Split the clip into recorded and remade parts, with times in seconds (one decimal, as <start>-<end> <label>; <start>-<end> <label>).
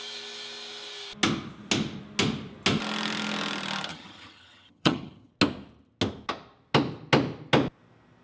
0.0-3.9 recorded; 3.9-5.3 remade; 5.3-8.2 recorded